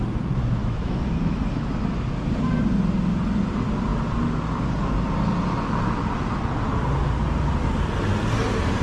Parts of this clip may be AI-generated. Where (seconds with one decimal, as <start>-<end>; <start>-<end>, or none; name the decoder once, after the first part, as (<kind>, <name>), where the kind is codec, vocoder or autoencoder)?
0.6-1.7 (autoencoder, DAC-VAE)